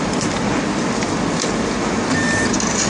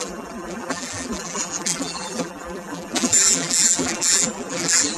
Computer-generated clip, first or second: second